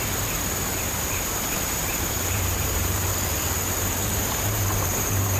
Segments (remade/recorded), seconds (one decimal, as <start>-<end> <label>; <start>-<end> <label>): 0.0-3.1 remade; 3.1-3.8 recorded; 3.8-5.4 remade

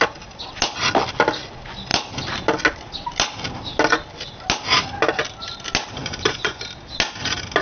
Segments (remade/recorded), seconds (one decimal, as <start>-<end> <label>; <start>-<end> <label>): 0.0-6.0 recorded; 6.0-6.6 remade; 6.6-7.6 recorded